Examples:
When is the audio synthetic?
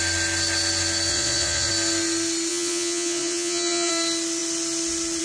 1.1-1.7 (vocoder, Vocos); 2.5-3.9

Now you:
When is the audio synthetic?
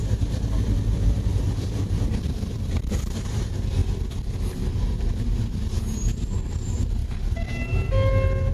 0.0-3.8 (vocoder, BigVGAN v2); 4.7-7.0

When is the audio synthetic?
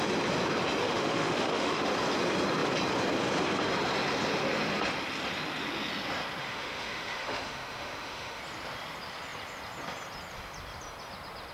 0.8-1.8 (autoencoder, DAC-VAE); 6.4-8.4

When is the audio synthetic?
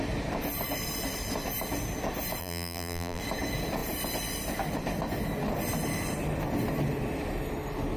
2.4-3.2 (vocoder, BigVGAN v2)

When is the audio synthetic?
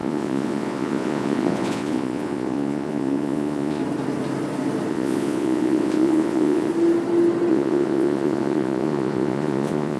0.0-3.8 (vocoder, Vocos); 4.9-6.7; 7.5-10.0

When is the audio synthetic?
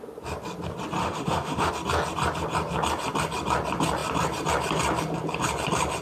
1.0-1.7 (autoencoder, DAC-VAE)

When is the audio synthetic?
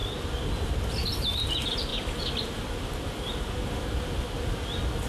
none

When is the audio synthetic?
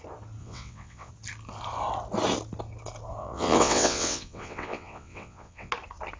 0.4-1.1 (vocoder, WaveNeXt); 3.2-5.7